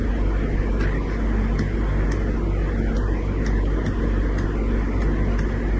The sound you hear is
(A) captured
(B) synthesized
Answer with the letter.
A